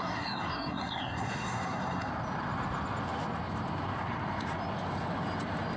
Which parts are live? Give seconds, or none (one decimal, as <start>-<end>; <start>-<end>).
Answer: 2.1-5.8